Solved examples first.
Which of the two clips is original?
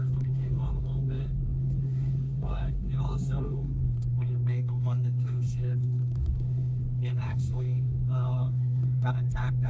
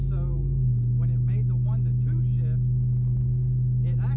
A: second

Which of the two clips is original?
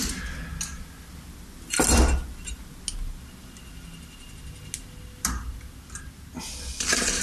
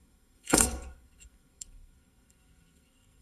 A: first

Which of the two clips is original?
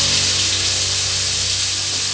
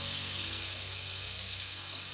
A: first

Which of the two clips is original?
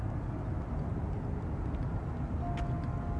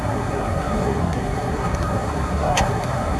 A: first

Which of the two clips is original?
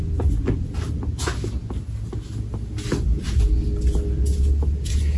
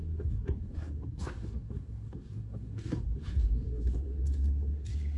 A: first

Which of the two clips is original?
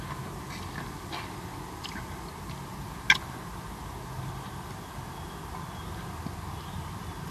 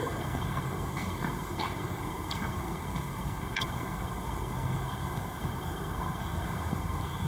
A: first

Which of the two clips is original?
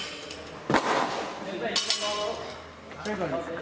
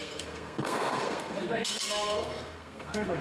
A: first